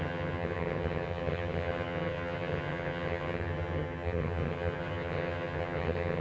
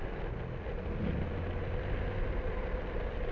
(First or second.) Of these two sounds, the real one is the second